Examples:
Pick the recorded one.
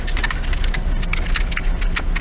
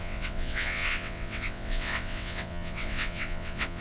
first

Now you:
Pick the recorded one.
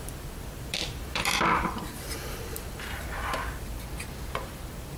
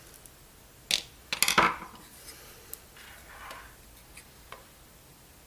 second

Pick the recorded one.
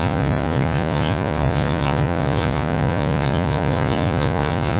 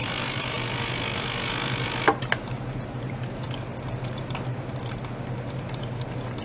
second